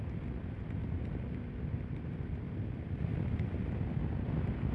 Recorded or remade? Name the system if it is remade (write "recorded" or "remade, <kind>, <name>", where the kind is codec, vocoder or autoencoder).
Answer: recorded